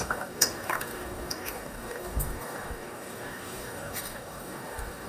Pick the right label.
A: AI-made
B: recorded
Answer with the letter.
A